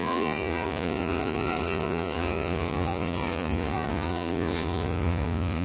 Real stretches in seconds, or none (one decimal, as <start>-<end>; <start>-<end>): none